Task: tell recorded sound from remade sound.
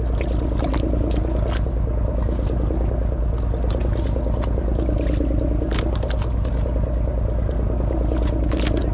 recorded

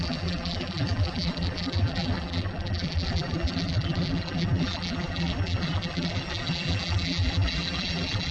remade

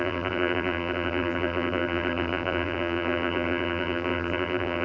remade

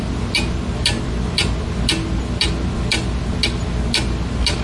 recorded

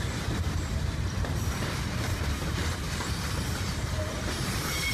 remade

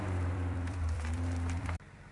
remade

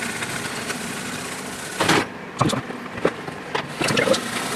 recorded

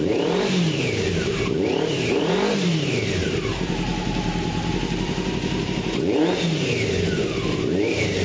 remade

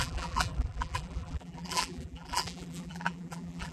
remade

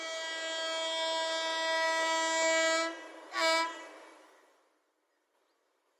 recorded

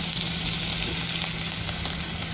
recorded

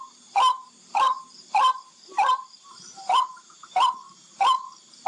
remade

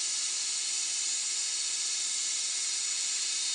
recorded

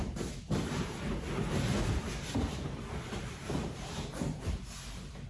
remade